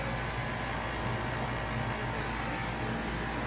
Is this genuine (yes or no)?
yes